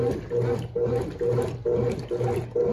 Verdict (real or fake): real